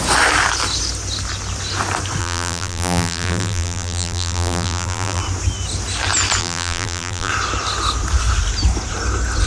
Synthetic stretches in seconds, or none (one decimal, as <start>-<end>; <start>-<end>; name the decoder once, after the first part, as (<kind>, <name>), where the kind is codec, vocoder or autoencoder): 2.2-5.2 (vocoder, BigVGAN v2); 6.4-7.3